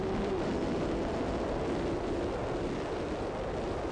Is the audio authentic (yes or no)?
yes